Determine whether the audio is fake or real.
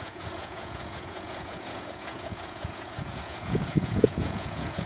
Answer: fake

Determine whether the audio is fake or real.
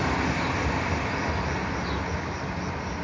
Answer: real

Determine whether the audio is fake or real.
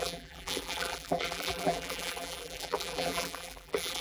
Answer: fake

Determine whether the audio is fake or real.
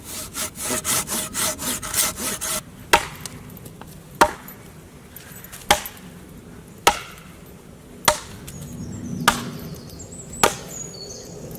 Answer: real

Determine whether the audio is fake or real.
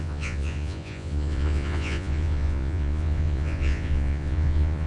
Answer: fake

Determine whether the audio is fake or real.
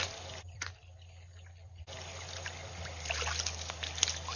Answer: real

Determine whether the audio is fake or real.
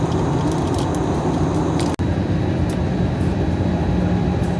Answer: real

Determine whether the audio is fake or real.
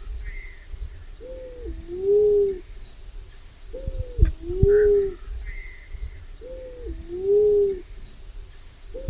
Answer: real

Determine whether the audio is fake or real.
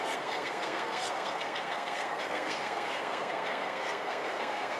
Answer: fake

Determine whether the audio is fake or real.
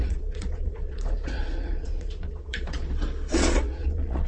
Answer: fake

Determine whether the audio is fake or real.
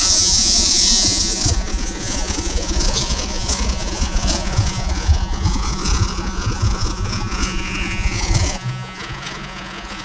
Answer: fake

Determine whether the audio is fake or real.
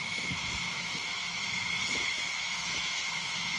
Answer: fake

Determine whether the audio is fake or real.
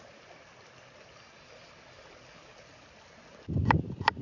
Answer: real